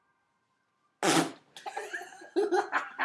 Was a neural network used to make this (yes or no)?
no